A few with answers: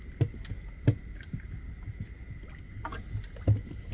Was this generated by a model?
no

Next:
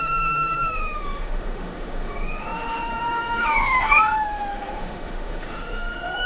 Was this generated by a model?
yes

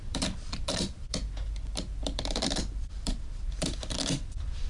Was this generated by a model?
yes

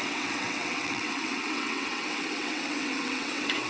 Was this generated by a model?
yes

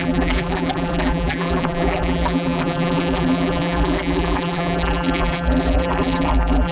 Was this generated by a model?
yes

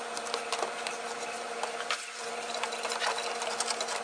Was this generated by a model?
no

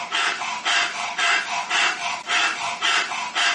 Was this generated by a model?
no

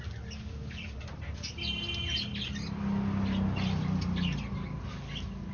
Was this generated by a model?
no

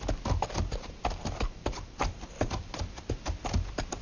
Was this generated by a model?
no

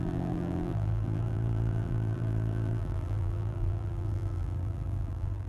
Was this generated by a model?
yes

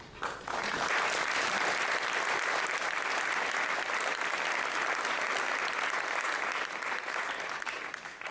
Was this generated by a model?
no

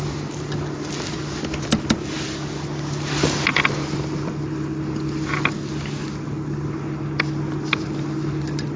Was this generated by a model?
no